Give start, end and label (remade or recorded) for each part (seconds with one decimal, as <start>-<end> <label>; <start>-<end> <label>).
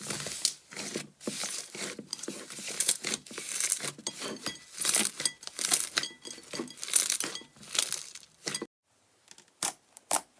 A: 0.0-1.4 recorded; 1.4-4.2 remade; 4.2-10.4 recorded